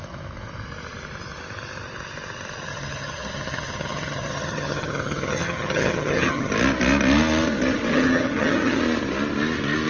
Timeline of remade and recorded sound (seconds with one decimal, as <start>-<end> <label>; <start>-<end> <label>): 0.0-2.7 recorded; 2.7-6.5 remade; 6.5-7.9 recorded; 7.9-8.8 remade; 8.8-9.9 recorded